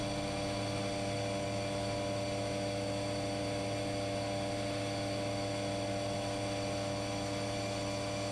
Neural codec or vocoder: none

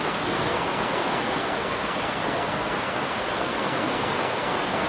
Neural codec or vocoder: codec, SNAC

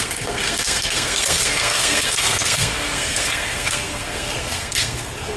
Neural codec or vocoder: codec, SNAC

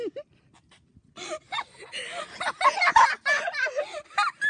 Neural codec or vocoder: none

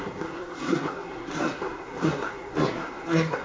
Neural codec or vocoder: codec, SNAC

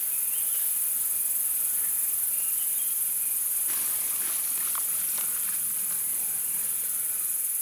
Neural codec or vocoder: none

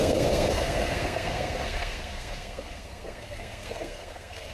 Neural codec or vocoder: codec, SNAC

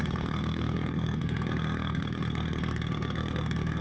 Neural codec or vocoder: codec, SNAC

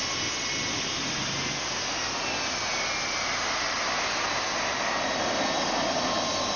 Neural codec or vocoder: none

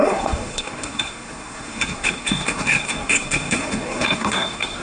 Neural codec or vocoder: codec, SNAC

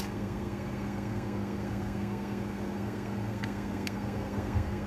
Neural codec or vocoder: codec, SNAC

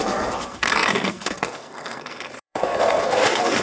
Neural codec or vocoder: codec, SNAC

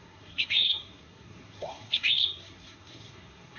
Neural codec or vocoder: codec, SNAC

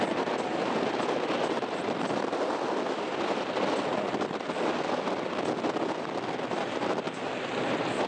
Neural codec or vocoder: none